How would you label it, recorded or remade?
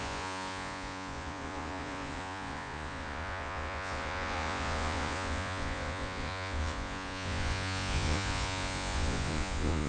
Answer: remade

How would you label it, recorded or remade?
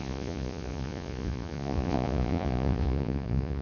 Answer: remade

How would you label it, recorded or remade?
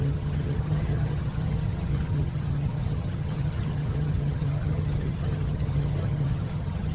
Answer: remade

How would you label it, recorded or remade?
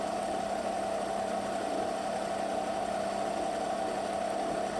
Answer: recorded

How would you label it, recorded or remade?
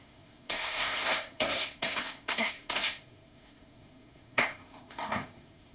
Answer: remade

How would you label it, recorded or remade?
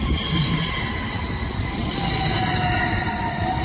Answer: remade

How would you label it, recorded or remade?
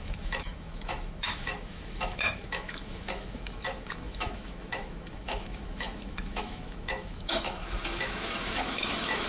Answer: remade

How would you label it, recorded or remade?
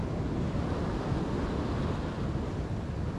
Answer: recorded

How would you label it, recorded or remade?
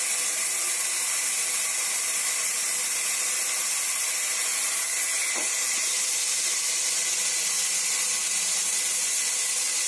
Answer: recorded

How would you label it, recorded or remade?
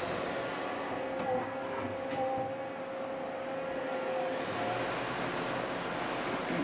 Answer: recorded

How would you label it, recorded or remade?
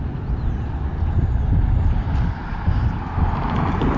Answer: recorded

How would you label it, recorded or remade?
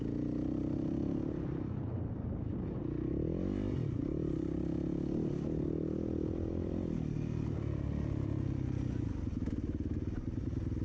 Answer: recorded